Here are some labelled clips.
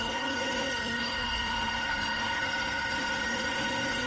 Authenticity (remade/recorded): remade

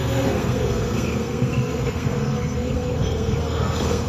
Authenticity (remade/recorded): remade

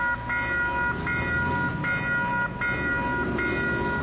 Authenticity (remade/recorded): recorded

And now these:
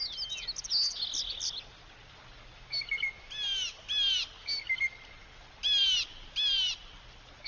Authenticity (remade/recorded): recorded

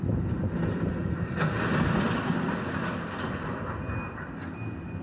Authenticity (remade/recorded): recorded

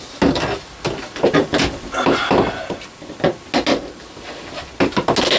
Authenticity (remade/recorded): recorded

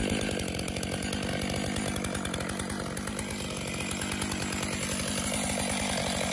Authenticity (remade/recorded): recorded